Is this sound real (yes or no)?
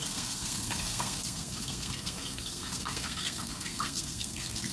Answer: no